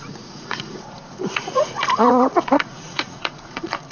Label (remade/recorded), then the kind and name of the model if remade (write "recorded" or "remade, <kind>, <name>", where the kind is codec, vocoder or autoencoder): remade, vocoder, Vocos